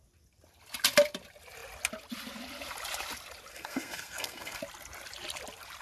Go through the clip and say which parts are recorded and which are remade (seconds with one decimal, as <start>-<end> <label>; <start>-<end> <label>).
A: 0.0-3.5 recorded; 3.5-4.6 remade; 4.6-5.8 recorded